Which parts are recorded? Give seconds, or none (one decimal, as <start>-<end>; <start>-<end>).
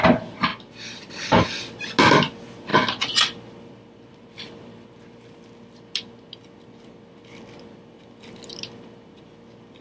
0.0-9.8